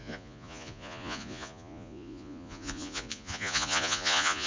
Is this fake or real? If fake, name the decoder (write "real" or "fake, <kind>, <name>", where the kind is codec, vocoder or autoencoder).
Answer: fake, vocoder, Vocos